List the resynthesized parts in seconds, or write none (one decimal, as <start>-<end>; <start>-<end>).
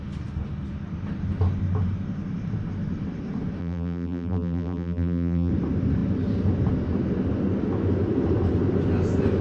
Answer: 3.6-5.5